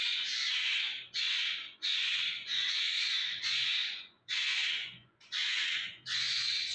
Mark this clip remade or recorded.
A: remade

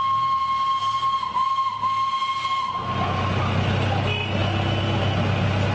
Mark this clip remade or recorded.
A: recorded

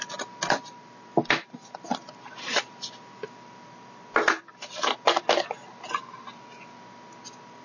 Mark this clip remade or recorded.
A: recorded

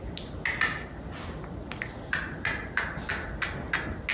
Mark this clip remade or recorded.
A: recorded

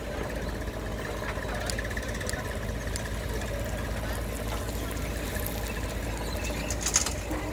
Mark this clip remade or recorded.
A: recorded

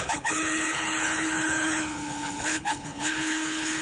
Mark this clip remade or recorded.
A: remade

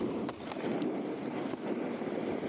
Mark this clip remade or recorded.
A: remade